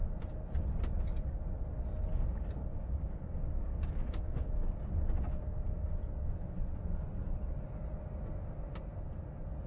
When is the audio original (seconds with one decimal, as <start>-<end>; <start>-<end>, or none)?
0.0-2.6; 4.5-9.7